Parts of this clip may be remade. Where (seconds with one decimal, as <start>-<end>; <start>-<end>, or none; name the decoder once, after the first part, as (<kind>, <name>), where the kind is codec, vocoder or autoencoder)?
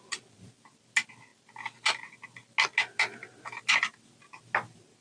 none